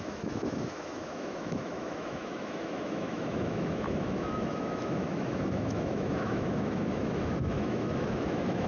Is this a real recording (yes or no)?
no